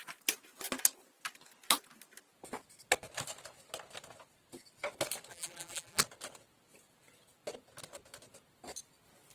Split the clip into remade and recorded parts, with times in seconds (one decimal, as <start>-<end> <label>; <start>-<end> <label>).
0.0-5.3 recorded; 5.3-6.0 remade; 6.0-9.3 recorded